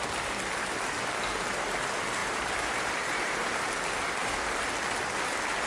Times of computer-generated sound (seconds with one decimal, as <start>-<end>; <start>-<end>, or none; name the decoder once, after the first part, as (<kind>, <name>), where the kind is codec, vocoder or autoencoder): 2.2-3.6 (vocoder, BigVGAN v2)